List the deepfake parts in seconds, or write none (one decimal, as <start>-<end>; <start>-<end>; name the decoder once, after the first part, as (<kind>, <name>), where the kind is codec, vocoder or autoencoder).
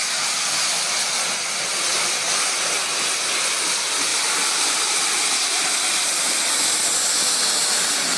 4.1-4.9 (vocoder, BigVGAN v2)